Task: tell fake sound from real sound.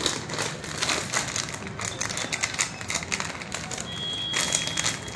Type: real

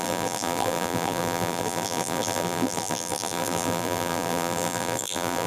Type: fake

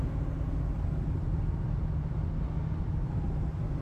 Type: real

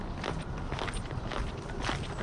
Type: fake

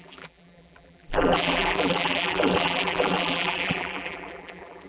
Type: fake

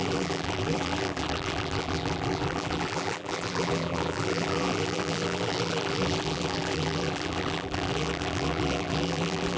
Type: fake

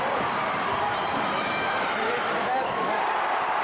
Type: fake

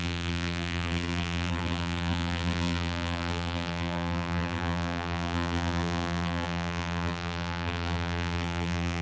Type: fake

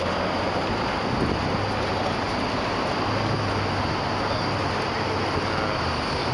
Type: real